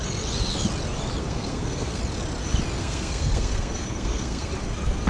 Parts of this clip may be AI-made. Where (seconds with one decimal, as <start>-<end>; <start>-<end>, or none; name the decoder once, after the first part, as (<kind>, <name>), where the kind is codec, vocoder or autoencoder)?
1.2-2.0 (codec, SNAC); 2.8-4.5